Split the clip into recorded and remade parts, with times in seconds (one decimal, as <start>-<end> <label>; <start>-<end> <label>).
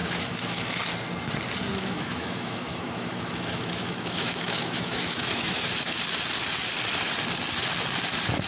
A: 0.0-0.8 remade; 0.8-1.7 recorded; 1.7-5.6 remade; 5.6-8.5 recorded